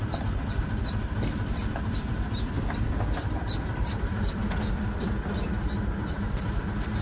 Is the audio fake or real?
fake